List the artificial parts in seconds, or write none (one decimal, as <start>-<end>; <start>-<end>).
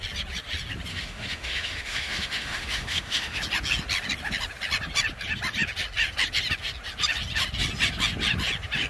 0.9-3.4